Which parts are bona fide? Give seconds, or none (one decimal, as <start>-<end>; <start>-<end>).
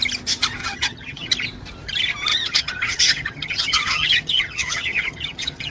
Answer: 0.0-0.6; 1.3-2.3